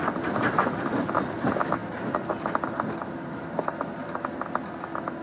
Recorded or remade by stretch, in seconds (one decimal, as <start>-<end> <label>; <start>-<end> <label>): 0.0-5.2 recorded